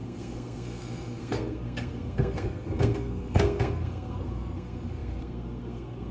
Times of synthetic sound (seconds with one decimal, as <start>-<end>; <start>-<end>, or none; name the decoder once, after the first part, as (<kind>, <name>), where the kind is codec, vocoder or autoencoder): 0.0-6.1 (codec, SNAC)